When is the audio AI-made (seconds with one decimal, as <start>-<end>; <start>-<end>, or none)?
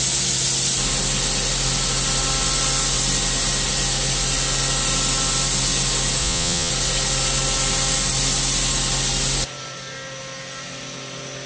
6.2-6.7